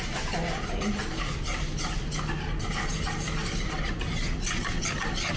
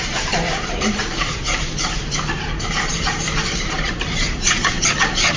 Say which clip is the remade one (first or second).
second